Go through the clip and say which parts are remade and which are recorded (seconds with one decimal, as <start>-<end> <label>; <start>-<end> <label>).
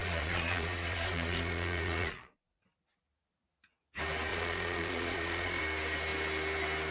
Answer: 0.0-2.6 remade; 2.6-4.3 recorded; 4.3-5.6 remade; 5.6-6.9 recorded